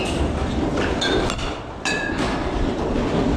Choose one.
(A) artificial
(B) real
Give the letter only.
B